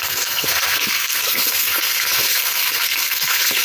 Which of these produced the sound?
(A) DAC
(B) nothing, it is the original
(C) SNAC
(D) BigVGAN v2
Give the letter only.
C